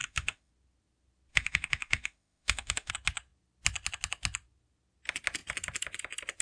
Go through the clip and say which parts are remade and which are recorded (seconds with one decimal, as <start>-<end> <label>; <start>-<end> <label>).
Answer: 0.0-0.5 remade; 0.5-1.3 recorded; 1.3-2.9 remade; 2.9-6.4 recorded

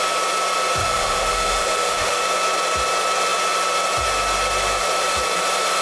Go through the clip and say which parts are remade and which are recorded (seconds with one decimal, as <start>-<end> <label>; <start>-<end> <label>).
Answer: 0.0-0.8 recorded; 0.8-2.2 remade; 2.2-5.8 recorded

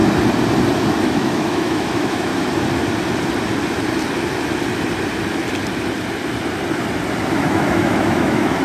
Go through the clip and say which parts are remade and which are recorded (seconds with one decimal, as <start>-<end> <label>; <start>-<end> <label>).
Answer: 0.0-1.0 recorded; 1.0-2.3 remade; 2.3-7.3 recorded; 7.3-8.6 remade

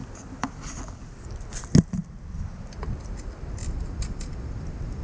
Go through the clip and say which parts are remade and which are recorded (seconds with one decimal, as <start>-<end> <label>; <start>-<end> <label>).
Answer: 0.0-5.0 recorded

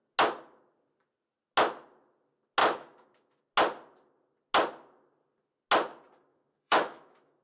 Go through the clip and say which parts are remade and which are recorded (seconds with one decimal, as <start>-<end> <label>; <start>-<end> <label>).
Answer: 0.0-2.6 recorded; 2.6-3.4 remade; 3.4-6.3 recorded; 6.3-7.4 remade